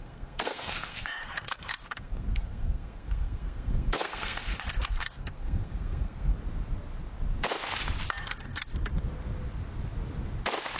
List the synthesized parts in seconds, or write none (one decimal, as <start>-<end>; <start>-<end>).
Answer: 0.0-6.3; 8.2-8.7